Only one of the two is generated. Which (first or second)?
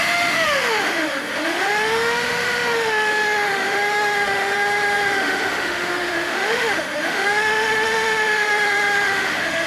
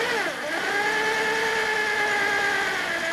first